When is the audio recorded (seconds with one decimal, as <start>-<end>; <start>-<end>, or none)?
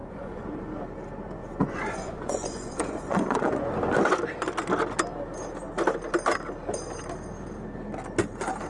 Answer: 0.8-1.4; 3.7-8.7